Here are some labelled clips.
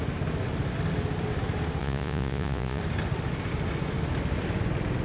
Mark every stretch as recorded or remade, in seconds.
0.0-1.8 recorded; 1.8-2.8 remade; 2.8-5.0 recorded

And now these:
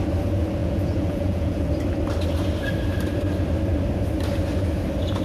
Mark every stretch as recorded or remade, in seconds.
0.0-0.6 recorded; 0.6-1.7 remade; 1.7-5.2 recorded

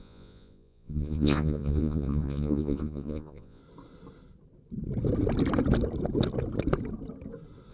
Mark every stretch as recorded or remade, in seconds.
0.0-3.6 remade; 3.6-7.7 recorded

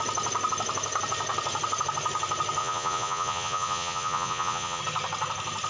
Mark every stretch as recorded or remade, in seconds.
0.0-2.6 recorded; 2.6-4.8 remade; 4.8-5.7 recorded

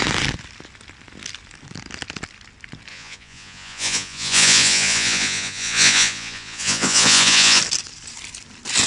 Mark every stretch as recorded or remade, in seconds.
0.0-2.9 recorded; 2.9-7.6 remade; 7.6-8.9 recorded

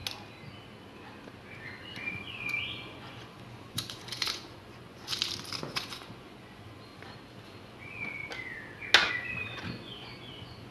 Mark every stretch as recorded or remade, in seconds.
0.0-2.1 recorded; 2.1-5.1 remade; 5.1-5.6 recorded; 5.6-6.9 remade; 6.9-7.6 recorded; 7.6-8.2 remade; 8.2-9.1 recorded; 9.1-10.7 remade

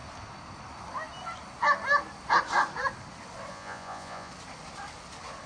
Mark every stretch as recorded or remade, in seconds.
0.0-3.5 recorded; 3.5-4.3 remade; 4.3-5.5 recorded